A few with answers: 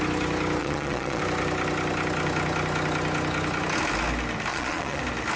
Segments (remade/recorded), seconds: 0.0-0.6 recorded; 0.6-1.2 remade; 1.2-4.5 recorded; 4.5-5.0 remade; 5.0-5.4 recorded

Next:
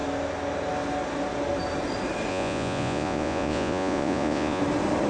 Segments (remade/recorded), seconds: 0.0-2.3 recorded; 2.3-4.6 remade; 4.6-5.1 recorded

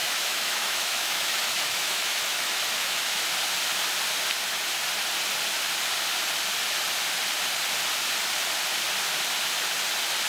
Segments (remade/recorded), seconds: 0.0-3.2 remade; 3.2-10.3 recorded

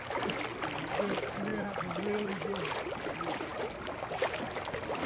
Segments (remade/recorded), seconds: 0.0-5.1 recorded

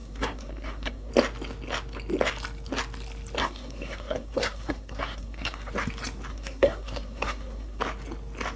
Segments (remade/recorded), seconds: 0.0-1.1 remade; 1.1-3.4 recorded; 3.4-5.7 remade; 5.7-6.3 recorded; 6.3-7.8 remade; 7.8-8.6 recorded

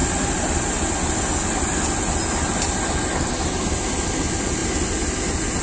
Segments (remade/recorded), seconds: 0.0-5.6 recorded

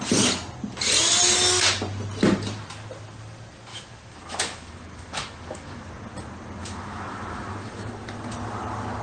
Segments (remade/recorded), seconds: 0.0-3.7 recorded; 3.7-5.9 remade; 5.9-6.6 recorded; 6.6-7.9 remade; 7.9-9.0 recorded

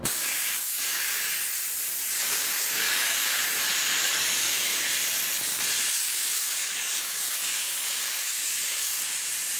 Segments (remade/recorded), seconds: 0.0-1.3 remade; 1.3-2.2 recorded; 2.2-3.4 remade; 3.4-4.0 recorded; 4.0-4.7 remade; 4.7-5.9 recorded; 5.9-8.9 remade; 8.9-9.6 recorded